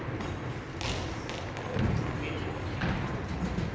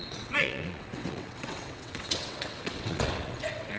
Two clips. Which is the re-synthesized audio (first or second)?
second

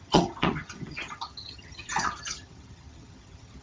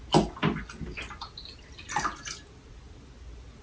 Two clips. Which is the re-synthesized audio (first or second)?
first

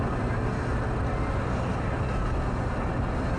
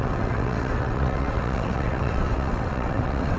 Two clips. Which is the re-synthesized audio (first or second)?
second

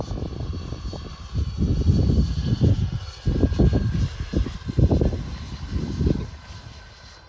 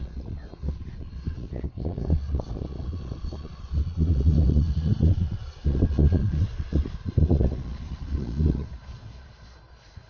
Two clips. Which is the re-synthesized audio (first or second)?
second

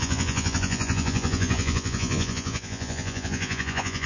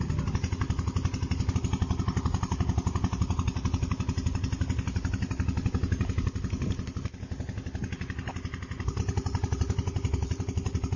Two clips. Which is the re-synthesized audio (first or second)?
first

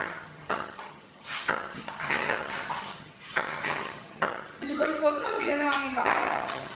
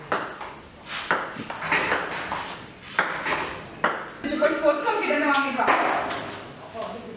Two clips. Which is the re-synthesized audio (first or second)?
first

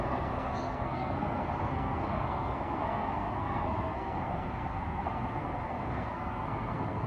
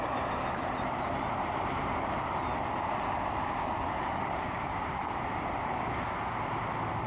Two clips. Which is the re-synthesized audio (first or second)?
first